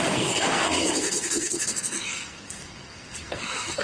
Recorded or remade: remade